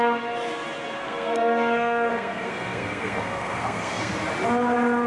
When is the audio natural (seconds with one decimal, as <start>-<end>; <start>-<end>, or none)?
0.0-1.0; 4.1-5.1